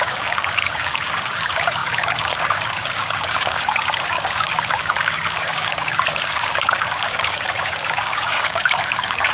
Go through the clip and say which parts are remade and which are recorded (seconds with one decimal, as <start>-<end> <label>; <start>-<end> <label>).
0.0-9.3 remade